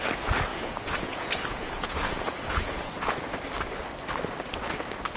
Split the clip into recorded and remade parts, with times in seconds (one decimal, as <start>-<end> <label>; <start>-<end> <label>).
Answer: 0.0-0.5 recorded; 0.5-3.4 remade; 3.4-5.2 recorded